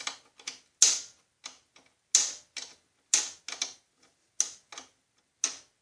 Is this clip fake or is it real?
real